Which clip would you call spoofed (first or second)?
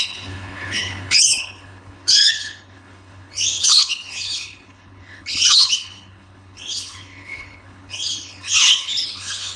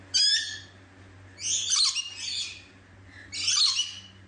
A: first